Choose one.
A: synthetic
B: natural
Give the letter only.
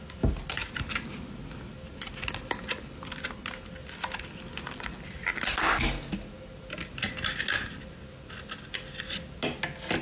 B